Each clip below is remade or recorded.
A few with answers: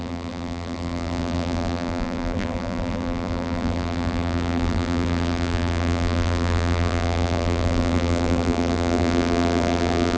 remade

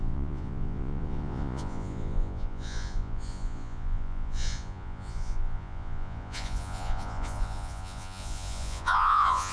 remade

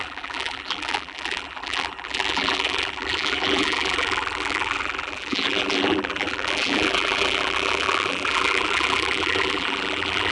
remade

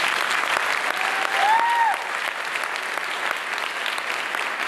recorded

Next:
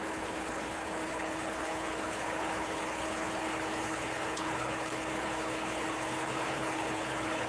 remade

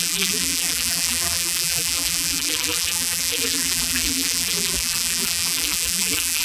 remade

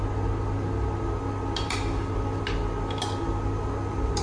recorded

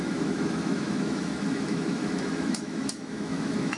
remade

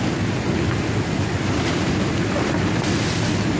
recorded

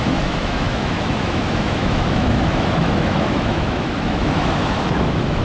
remade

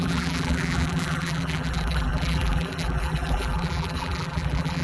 remade